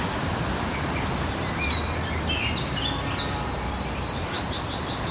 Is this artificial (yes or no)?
no